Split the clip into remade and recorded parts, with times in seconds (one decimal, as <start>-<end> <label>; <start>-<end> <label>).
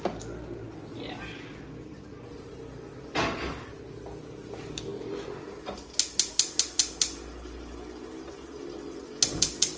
0.0-9.8 recorded